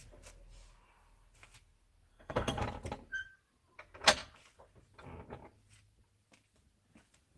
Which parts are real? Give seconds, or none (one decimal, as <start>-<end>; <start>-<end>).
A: 0.0-2.1; 2.6-7.4